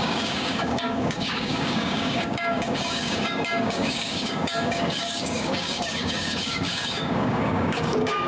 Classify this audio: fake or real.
fake